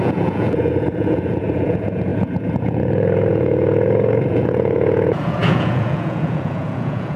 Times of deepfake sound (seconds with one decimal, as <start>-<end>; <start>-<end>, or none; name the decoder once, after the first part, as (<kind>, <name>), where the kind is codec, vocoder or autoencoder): 0.0-7.2 (vocoder, Vocos)